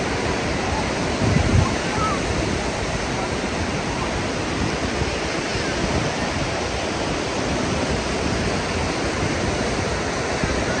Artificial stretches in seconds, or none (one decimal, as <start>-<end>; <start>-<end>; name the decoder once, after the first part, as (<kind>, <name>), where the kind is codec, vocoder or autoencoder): 0.0-10.8 (vocoder, BigVGAN v2)